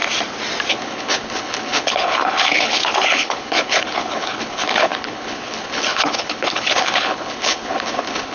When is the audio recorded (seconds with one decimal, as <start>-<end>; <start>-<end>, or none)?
0.0-0.7